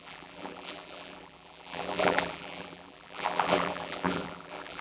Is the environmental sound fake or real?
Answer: fake